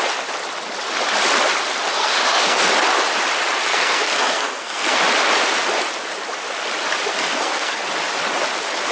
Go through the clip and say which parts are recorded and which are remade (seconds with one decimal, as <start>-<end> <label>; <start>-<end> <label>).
0.0-1.9 recorded; 1.9-2.7 remade; 2.7-3.7 recorded; 3.7-5.0 remade; 5.0-7.1 recorded; 7.1-7.8 remade; 7.8-8.9 recorded